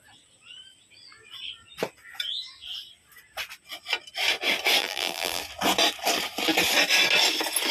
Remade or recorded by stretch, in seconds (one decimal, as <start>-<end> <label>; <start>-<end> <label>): 0.0-4.8 recorded; 4.8-5.4 remade; 5.4-7.7 recorded